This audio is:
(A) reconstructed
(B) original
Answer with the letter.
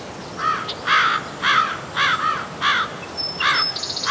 B